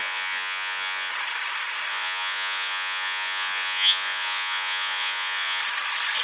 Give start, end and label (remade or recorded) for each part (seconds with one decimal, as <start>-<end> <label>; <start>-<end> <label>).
0.0-1.1 remade; 1.1-1.9 recorded; 1.9-5.6 remade; 5.6-6.2 recorded